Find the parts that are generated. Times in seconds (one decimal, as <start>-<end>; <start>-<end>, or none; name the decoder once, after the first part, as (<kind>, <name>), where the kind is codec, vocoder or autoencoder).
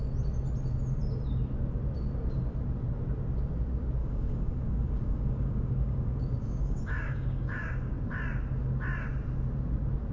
4.0-7.9 (codec, DAC)